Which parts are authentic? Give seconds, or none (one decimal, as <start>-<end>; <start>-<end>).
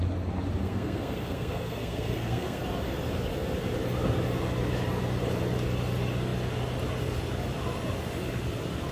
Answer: 0.0-0.6; 2.6-8.9